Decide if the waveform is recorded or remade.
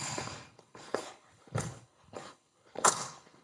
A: remade